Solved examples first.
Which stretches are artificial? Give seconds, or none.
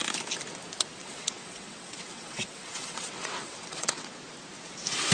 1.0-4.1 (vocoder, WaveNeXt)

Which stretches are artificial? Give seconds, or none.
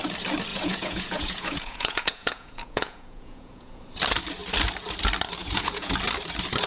0.5-3.8 (vocoder, Vocos); 5.4-5.9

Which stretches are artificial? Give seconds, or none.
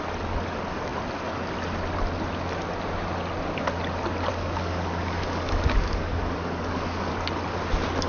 4.3-7.1 (codec, DAC)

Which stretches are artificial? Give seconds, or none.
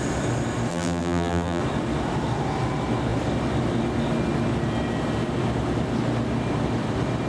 0.7-1.6 (vocoder, BigVGAN v2)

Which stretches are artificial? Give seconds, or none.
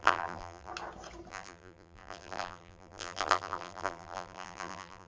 0.0-0.7 (vocoder, BigVGAN v2); 1.3-5.1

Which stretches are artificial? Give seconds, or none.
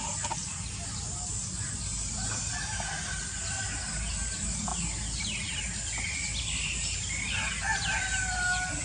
none